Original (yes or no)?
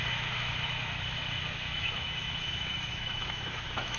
no